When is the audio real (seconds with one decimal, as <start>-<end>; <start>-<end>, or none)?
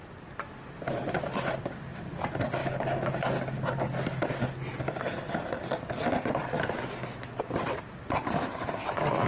0.0-9.3